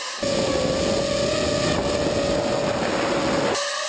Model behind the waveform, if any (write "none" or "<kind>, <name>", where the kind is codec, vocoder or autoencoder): none